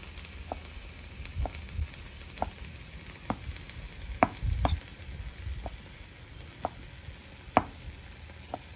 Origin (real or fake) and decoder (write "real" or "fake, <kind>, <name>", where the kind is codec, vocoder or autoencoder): real